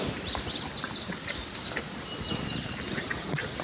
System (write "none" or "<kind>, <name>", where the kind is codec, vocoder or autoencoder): vocoder, BigVGAN v2